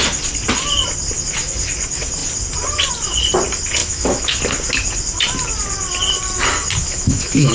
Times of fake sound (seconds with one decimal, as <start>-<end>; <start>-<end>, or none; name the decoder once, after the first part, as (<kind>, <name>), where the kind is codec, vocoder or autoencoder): 3.8-4.4 (autoencoder, DAC-VAE); 6.8-7.5

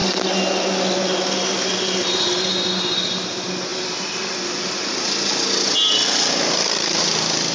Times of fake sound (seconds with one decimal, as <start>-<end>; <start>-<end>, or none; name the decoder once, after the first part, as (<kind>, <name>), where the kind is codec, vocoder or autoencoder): none

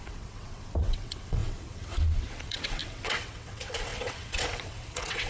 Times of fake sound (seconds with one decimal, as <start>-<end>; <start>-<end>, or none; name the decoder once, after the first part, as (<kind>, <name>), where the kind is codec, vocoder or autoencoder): 0.0-5.3 (vocoder, WaveNeXt)

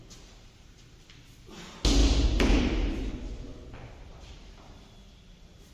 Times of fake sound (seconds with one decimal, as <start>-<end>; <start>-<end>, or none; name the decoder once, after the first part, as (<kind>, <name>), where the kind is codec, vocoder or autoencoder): none

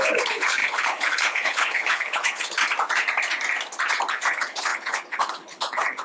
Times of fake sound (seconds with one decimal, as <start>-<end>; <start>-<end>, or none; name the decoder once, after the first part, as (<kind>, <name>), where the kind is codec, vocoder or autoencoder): 0.0-2.6 (codec, HILCodec); 4.1-6.0